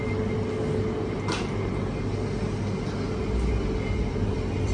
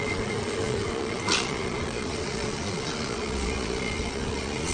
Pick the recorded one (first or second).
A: first